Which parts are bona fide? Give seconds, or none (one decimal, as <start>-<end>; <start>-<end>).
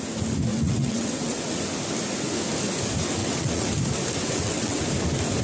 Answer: 0.0-0.5; 1.5-3.2; 3.7-4.2; 4.8-5.4